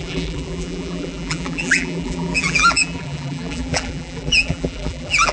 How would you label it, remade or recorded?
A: remade